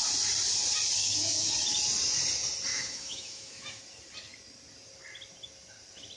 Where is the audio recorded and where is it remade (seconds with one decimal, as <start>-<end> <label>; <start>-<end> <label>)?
0.0-1.0 recorded; 1.0-1.5 remade; 1.5-2.7 recorded; 2.7-3.8 remade; 3.8-6.2 recorded

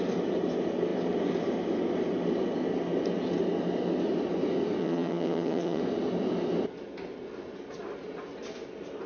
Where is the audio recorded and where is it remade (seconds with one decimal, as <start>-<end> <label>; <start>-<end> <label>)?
0.0-4.8 recorded; 4.8-5.8 remade; 5.8-9.1 recorded

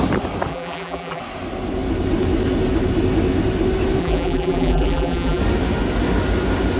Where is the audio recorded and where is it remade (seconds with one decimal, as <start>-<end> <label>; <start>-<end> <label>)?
0.0-0.5 recorded; 0.5-1.2 remade; 1.2-4.0 recorded; 4.0-5.4 remade; 5.4-6.8 recorded

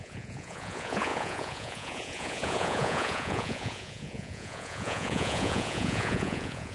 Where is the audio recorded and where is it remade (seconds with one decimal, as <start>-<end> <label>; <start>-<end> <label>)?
0.0-6.7 remade

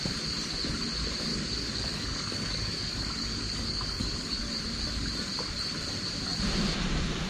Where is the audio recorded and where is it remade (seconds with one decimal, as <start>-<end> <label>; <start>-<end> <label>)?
0.0-1.3 recorded; 1.3-4.5 remade; 4.5-7.3 recorded

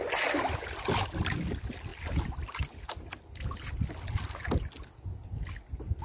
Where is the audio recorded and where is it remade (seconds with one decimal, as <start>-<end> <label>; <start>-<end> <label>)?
0.0-6.0 recorded

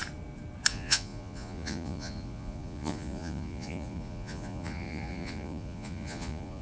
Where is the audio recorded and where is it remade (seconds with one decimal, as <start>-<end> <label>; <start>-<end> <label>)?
0.0-0.7 recorded; 0.7-6.6 remade

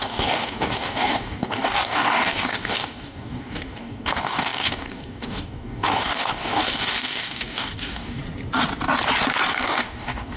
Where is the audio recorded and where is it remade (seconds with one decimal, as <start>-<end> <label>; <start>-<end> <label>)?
0.0-8.2 remade; 8.2-9.5 recorded; 9.5-10.4 remade